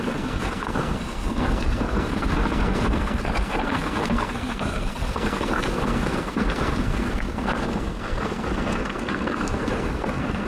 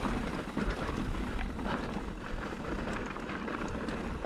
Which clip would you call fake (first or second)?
first